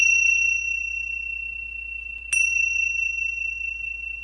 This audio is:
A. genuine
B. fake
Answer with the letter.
A